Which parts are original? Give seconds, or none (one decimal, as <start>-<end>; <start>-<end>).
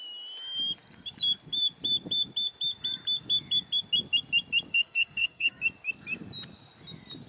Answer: 0.0-4.7; 5.6-7.3